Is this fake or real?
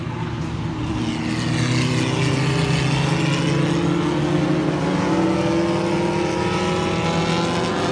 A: real